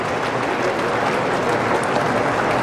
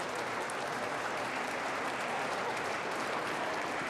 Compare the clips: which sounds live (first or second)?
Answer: first